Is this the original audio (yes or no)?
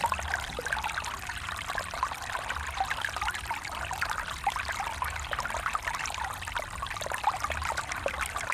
yes